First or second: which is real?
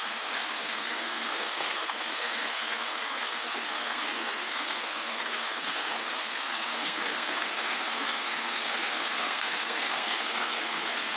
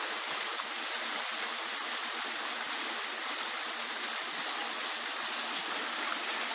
second